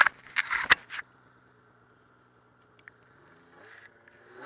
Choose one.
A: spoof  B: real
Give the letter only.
B